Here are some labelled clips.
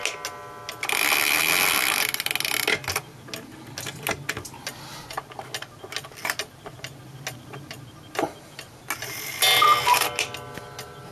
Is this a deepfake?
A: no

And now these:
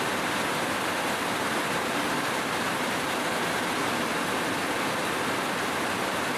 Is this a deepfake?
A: no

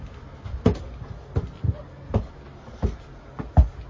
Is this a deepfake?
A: no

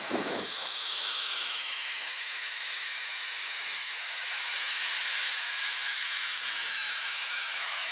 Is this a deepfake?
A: yes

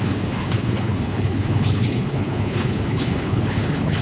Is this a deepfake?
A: yes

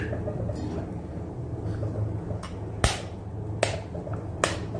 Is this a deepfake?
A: no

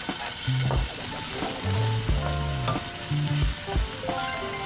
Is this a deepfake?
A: no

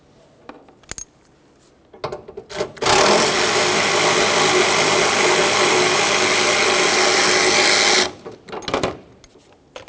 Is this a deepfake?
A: no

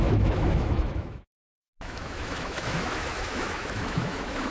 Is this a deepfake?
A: yes